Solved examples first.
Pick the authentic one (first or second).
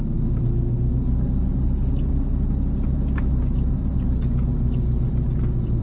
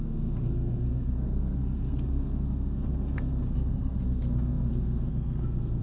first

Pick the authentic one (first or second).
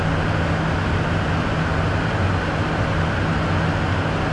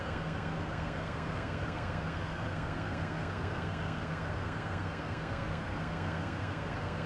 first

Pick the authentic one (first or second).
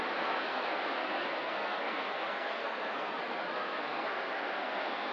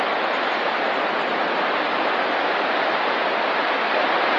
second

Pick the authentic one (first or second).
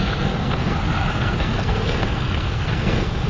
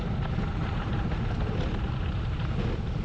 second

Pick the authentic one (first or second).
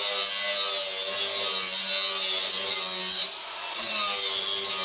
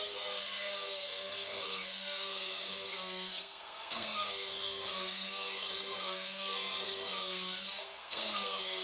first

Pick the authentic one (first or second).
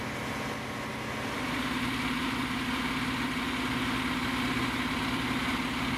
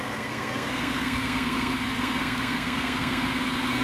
first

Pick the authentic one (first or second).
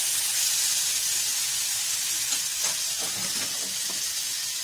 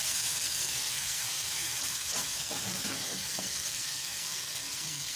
first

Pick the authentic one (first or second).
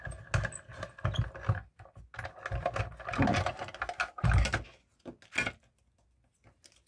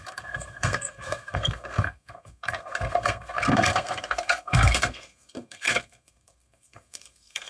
first